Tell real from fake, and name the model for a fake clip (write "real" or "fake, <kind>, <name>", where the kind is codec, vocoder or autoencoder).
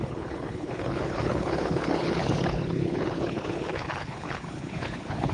fake, codec, HILCodec